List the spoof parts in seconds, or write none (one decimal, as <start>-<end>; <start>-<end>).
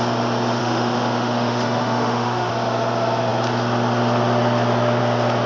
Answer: 0.6-2.5